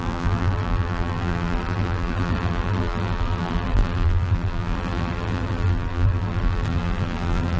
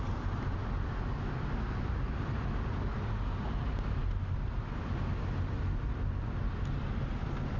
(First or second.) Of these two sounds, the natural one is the second